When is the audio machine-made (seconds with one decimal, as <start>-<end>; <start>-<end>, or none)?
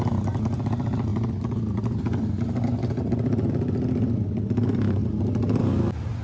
none